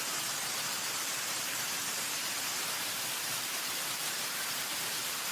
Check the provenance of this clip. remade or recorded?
remade